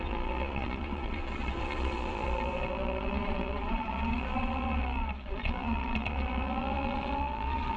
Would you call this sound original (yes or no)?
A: no